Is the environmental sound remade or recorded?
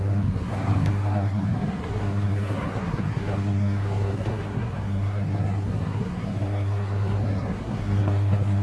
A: remade